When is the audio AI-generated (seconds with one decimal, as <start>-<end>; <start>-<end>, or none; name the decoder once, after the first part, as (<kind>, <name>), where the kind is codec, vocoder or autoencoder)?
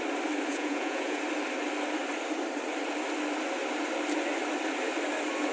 0.5-1.2 (vocoder, Vocos)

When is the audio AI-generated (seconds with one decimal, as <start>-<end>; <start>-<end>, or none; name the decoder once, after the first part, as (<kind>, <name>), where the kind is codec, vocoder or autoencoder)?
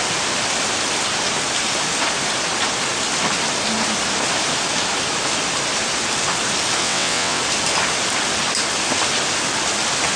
6.8-7.4 (vocoder, WaveNeXt)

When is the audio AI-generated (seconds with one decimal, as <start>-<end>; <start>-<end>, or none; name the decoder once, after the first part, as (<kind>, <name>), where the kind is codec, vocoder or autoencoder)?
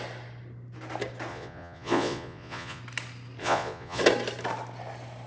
1.3-2.8 (vocoder, Vocos); 3.4-4.0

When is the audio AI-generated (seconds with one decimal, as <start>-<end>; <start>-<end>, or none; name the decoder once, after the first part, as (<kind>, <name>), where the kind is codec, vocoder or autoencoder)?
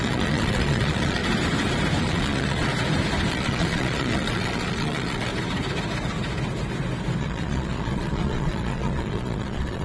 0.0-1.2 (vocoder, Vocos); 2.0-2.7; 3.3-5.3; 7.2-9.8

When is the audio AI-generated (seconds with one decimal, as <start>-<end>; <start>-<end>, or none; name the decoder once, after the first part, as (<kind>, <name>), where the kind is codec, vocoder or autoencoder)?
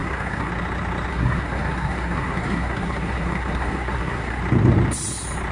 0.0-0.5 (codec, SNAC); 1.1-4.4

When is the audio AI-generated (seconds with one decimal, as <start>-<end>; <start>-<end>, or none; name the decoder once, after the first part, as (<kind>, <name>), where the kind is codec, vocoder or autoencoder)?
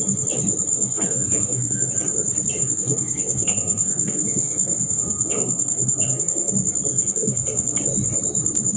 0.7-1.9 (codec, SNAC); 2.6-6.5; 6.9-7.8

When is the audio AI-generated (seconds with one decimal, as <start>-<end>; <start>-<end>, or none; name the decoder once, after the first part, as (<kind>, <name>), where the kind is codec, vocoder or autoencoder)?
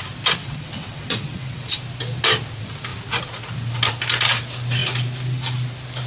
0.4-1.8 (vocoder, WaveNeXt)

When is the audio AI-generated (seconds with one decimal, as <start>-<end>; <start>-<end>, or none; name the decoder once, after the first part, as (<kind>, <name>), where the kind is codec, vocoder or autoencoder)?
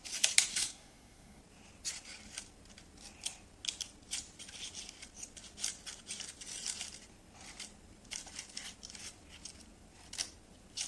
0.5-1.4 (codec, SNAC)